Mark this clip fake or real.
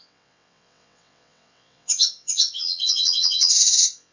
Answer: fake